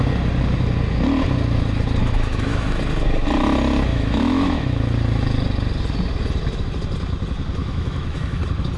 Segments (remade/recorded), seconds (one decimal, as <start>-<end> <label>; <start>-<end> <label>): 0.0-2.0 recorded; 2.0-2.8 remade; 2.8-3.9 recorded; 3.9-4.8 remade; 4.8-7.6 recorded; 7.6-8.4 remade; 8.4-8.8 recorded